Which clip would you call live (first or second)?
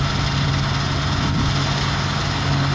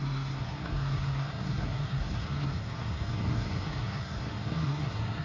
first